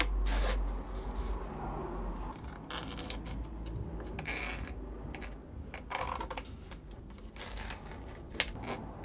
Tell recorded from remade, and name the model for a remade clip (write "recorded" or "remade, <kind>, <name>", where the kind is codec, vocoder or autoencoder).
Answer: recorded